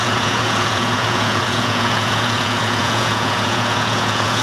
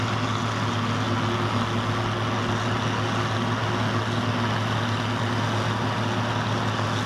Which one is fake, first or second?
first